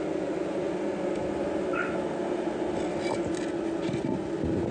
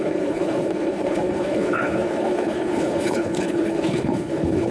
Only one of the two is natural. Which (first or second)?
first